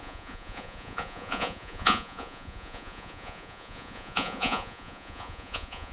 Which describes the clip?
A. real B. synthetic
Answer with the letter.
B